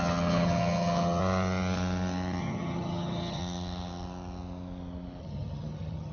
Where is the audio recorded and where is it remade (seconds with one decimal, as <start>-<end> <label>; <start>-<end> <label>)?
0.0-1.2 remade; 1.2-2.4 recorded; 2.4-3.4 remade; 3.4-5.2 recorded; 5.2-6.1 remade